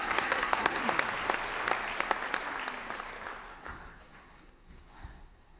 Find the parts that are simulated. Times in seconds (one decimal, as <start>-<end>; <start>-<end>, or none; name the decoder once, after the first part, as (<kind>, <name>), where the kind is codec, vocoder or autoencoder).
0.0-0.8 (codec, SNAC); 3.5-5.6